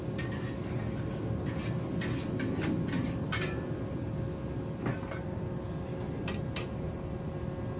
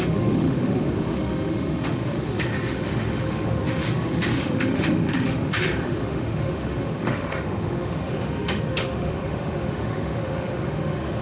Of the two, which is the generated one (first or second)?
second